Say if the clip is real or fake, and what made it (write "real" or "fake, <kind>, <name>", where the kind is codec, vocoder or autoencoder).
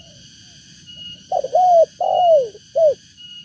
real